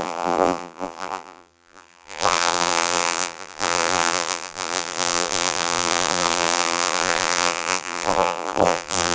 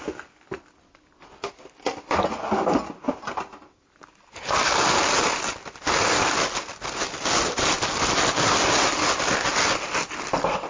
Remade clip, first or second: first